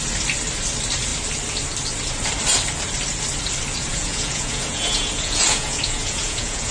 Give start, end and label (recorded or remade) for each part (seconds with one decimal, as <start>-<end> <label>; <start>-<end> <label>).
0.0-3.9 recorded; 3.9-6.7 remade